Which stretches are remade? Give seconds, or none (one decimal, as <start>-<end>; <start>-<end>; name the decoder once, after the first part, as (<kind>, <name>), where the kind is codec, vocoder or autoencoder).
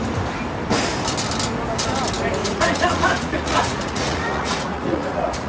2.4-5.5 (vocoder, Vocos)